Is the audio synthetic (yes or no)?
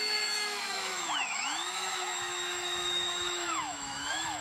yes